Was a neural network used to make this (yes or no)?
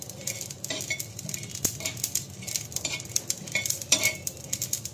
no